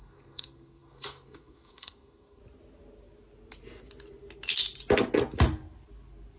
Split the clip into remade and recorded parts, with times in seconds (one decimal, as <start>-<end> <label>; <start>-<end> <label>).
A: 0.0-2.4 remade; 2.4-6.4 recorded